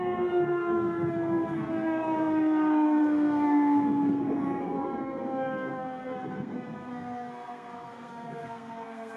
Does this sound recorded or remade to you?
remade